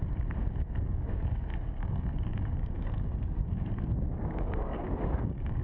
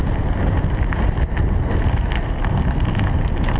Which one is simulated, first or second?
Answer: first